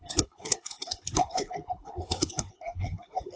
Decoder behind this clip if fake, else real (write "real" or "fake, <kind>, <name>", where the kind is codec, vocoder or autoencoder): fake, codec, HILCodec